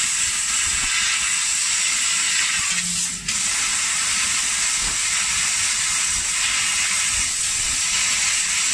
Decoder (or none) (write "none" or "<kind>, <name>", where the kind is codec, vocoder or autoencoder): none